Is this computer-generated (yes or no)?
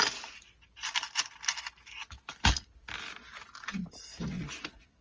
no